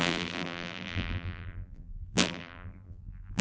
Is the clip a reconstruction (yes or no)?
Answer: yes